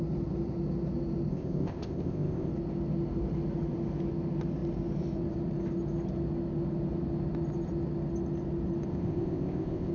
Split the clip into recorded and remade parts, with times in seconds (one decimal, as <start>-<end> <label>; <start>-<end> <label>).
0.0-1.3 recorded; 1.3-2.5 remade; 2.5-8.9 recorded; 8.9-9.9 remade